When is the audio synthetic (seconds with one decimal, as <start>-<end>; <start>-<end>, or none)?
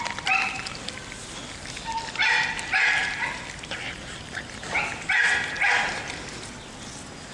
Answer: none